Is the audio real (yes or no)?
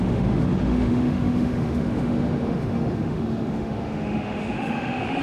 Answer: no